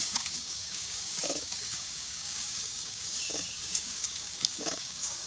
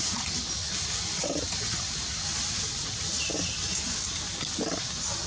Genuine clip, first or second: second